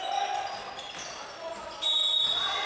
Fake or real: real